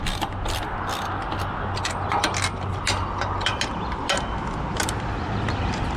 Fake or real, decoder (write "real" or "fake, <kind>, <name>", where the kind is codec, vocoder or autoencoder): real